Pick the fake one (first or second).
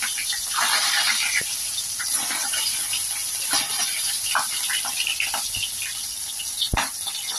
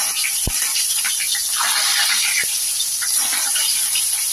second